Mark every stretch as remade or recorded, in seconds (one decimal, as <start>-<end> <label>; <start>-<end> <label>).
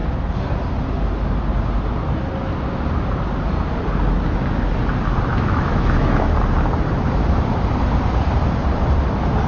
0.0-5.3 recorded; 5.3-6.4 remade; 6.4-9.5 recorded